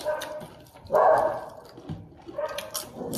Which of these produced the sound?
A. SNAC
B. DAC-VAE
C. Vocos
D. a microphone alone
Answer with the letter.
D